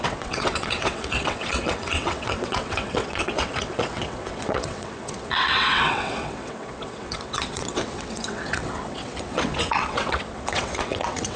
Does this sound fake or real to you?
fake